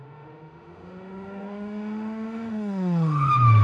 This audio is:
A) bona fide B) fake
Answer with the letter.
B